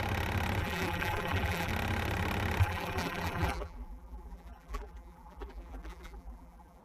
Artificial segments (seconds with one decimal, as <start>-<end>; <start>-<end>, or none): 0.6-1.7; 2.6-6.8